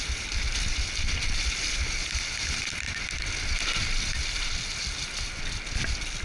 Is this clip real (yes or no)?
yes